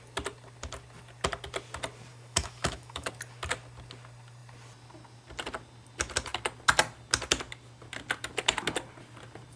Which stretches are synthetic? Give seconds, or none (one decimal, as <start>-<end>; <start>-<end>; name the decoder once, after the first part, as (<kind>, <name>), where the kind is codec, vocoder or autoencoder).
2.1-3.1 (autoencoder, DAC-VAE)